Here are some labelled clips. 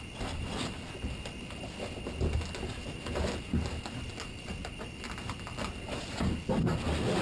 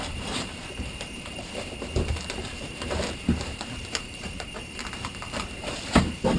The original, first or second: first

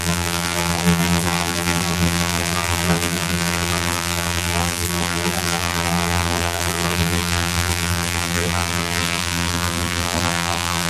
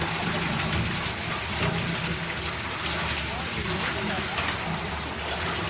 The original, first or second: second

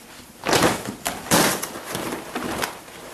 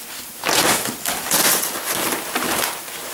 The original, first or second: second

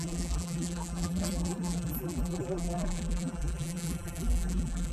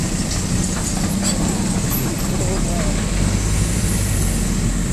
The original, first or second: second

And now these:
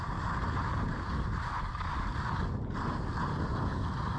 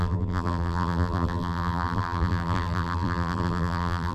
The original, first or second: first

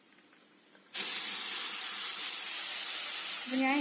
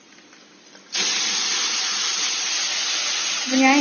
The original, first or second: first